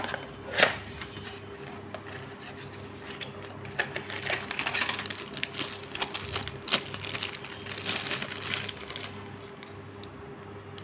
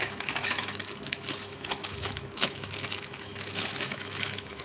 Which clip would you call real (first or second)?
first